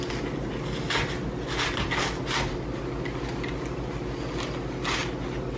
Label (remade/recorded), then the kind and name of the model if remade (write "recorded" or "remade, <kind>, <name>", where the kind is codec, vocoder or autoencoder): recorded